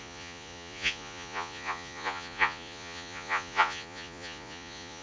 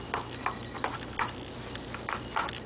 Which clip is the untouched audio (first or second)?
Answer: second